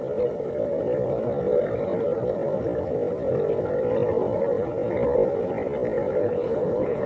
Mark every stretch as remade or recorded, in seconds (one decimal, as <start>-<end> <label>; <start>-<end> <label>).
0.0-6.2 recorded; 6.2-7.1 remade